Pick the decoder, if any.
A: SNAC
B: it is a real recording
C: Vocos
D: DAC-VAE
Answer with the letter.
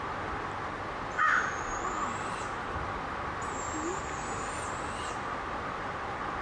B